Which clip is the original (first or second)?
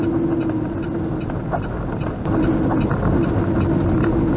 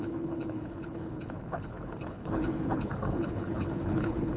first